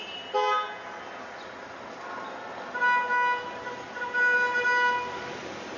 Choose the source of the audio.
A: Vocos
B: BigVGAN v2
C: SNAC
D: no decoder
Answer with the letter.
D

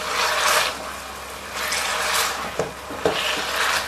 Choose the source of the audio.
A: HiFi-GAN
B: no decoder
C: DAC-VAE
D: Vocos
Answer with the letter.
B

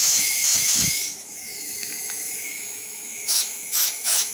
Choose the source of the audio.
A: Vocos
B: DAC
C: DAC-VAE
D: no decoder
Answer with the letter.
C